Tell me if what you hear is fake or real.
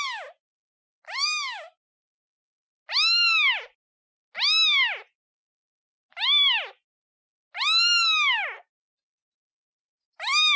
real